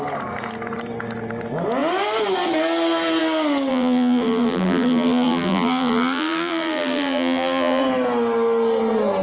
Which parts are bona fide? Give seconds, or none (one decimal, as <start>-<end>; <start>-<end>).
0.0-3.7; 7.8-9.2